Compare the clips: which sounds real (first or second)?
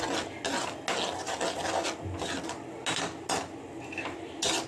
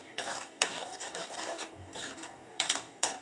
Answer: first